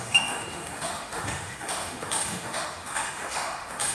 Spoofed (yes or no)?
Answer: yes